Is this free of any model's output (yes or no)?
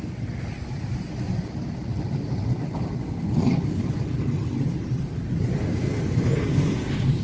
yes